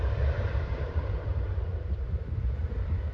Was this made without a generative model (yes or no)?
no